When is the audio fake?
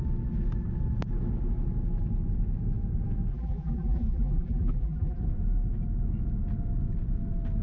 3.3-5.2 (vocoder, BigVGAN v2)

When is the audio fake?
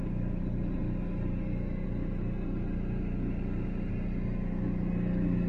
none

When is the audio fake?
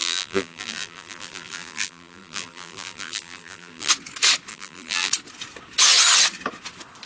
0.0-3.9 (vocoder, BigVGAN v2); 4.5-5.1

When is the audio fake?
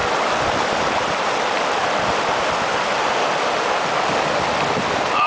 none